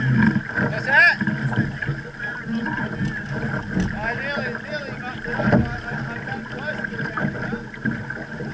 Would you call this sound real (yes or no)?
yes